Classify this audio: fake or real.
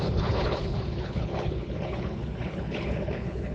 fake